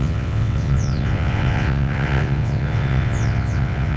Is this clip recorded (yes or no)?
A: no